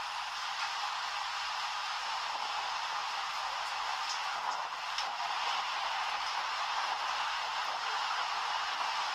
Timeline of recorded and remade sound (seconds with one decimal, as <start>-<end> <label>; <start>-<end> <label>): 0.0-3.9 recorded; 3.9-7.0 remade; 7.0-7.5 recorded; 7.5-8.1 remade; 8.1-9.1 recorded